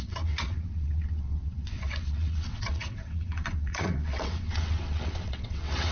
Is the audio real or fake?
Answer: fake